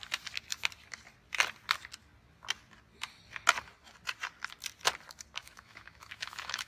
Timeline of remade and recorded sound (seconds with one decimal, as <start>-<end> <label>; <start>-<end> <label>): 0.0-5.4 recorded; 5.4-6.7 remade